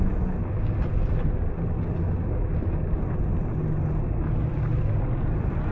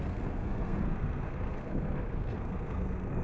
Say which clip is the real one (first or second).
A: first